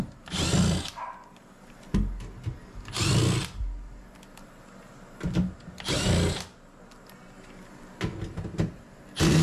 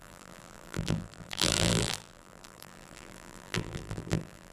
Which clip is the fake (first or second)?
second